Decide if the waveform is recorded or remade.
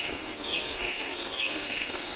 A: remade